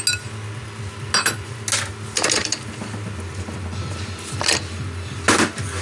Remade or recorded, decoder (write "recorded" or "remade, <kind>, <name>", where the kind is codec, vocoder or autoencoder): recorded